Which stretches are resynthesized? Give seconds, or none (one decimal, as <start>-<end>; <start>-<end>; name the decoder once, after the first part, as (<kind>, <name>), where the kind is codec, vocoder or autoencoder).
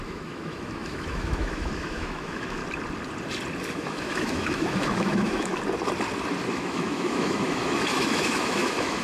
0.0-2.6 (autoencoder, DAC-VAE); 3.7-5.5; 6.5-9.0